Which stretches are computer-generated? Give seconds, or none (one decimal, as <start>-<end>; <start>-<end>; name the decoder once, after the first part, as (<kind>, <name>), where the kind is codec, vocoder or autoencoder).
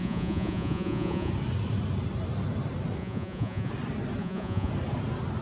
0.0-1.3 (vocoder, Vocos); 3.0-3.7; 4.2-4.7